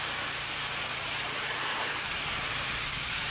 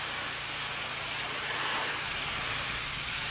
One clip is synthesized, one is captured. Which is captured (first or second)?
second